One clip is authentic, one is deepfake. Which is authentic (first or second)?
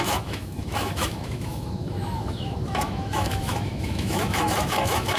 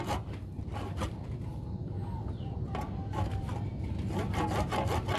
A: second